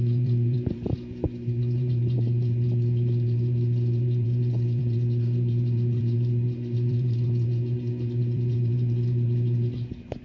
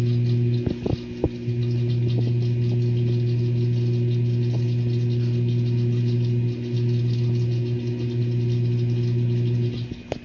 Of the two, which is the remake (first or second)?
first